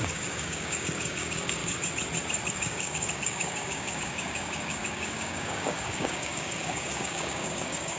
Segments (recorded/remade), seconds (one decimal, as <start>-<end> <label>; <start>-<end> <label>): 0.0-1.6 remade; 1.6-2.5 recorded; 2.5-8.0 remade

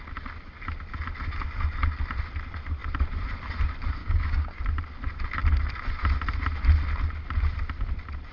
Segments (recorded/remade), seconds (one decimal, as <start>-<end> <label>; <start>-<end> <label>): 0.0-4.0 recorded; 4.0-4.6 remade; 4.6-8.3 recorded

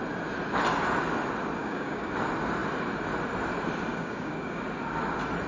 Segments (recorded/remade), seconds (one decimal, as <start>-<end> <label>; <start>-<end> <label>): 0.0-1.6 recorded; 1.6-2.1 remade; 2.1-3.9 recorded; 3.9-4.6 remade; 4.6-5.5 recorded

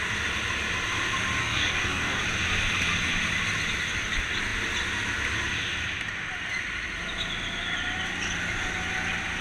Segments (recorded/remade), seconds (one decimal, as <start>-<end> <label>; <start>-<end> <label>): 0.0-1.4 recorded; 1.4-2.2 remade; 2.2-9.4 recorded